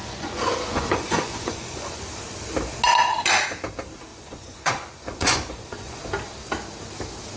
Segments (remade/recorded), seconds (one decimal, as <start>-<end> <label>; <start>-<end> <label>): 0.0-2.0 remade; 2.0-4.1 recorded; 4.1-6.0 remade; 6.0-7.4 recorded